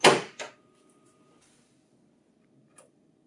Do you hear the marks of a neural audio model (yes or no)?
yes